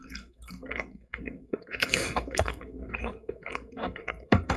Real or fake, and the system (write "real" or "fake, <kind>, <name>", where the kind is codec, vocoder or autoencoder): fake, codec, SNAC